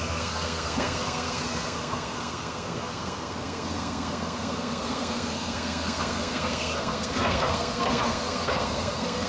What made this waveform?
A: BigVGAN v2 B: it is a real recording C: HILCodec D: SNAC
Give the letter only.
D